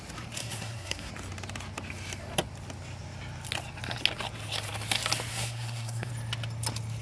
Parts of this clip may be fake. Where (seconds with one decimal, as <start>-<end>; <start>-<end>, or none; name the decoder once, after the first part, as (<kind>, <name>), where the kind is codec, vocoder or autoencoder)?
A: 0.4-1.1 (codec, SNAC); 5.3-6.1